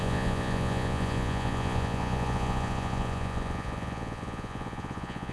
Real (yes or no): no